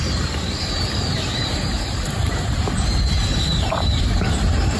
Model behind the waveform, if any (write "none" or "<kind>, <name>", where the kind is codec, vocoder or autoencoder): vocoder, BigVGAN v2